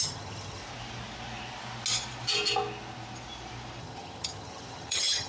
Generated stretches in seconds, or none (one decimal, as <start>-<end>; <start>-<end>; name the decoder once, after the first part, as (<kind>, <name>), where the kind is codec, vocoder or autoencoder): 0.0-0.6 (vocoder, HiFi-GAN); 3.8-5.3